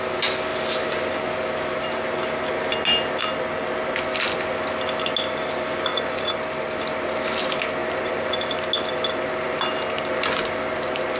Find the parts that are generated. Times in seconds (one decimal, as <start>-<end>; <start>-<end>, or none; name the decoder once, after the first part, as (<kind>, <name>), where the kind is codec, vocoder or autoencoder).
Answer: 5.9-6.8 (vocoder, BigVGAN v2); 7.8-8.5